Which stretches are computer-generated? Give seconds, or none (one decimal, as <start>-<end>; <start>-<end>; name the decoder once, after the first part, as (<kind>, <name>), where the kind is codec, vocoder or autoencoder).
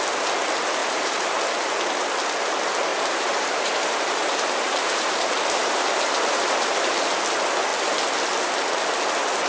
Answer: 0.8-1.4 (vocoder, BigVGAN v2); 2.9-7.2